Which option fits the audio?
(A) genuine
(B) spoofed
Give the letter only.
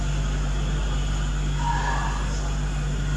A